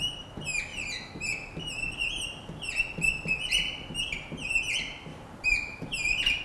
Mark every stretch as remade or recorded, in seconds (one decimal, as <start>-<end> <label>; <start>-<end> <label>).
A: 0.0-5.1 recorded; 5.1-6.4 remade